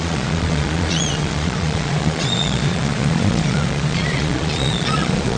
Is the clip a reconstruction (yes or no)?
yes